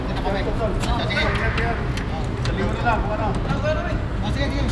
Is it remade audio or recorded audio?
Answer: recorded